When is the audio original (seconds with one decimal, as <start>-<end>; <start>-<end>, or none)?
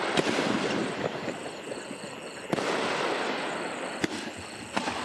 0.0-0.8; 1.9-5.0